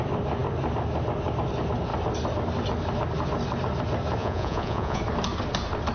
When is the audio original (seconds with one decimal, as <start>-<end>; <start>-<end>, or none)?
0.0-4.2; 5.0-5.9